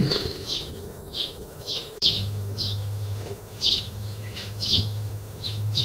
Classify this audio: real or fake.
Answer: fake